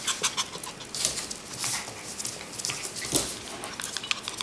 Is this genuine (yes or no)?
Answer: yes